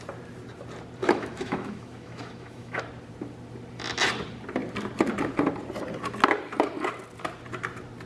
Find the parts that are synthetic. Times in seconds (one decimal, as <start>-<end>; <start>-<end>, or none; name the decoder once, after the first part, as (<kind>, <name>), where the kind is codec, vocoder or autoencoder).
1.0-2.8 (autoencoder, DAC-VAE)